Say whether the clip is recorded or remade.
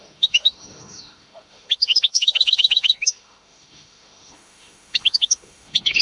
remade